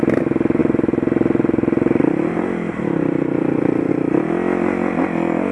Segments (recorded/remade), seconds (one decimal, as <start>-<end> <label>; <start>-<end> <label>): 0.0-0.6 recorded; 0.6-3.9 remade; 3.9-5.5 recorded